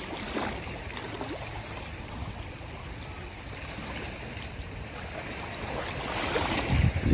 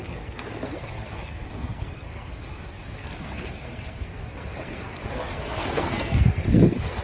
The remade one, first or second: second